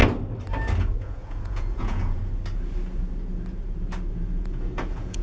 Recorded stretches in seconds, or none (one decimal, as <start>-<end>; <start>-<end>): 0.0-0.8; 2.2-4.1

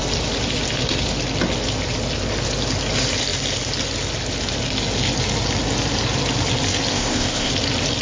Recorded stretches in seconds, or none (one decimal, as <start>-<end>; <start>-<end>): 0.0-6.9; 7.5-8.0